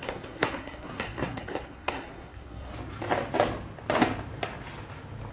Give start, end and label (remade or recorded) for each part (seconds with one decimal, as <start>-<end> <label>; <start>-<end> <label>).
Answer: 0.0-2.7 remade; 2.7-5.3 recorded